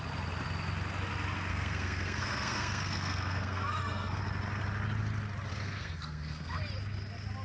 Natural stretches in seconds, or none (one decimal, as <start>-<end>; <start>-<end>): 0.0-1.5; 4.2-5.5; 6.6-7.4